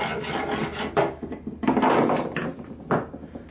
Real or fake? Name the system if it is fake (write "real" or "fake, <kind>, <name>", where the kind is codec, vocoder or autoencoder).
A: real